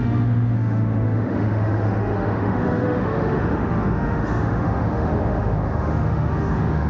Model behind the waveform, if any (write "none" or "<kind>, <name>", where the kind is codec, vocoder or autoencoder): autoencoder, DAC-VAE